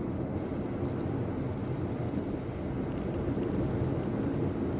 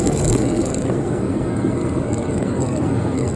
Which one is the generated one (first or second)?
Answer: second